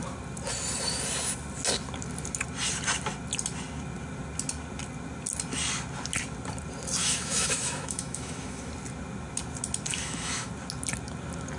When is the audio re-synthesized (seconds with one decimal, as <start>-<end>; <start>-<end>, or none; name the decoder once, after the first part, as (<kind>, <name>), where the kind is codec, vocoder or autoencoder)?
7.0-8.7 (autoencoder, DAC-VAE); 9.9-10.5